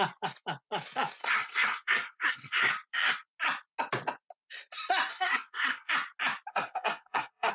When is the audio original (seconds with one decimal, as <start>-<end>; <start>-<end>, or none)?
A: 0.0-1.2; 2.7-5.1; 5.9-6.5